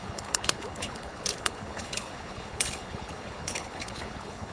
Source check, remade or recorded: remade